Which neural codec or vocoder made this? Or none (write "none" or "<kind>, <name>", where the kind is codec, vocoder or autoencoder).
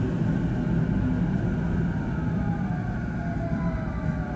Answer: none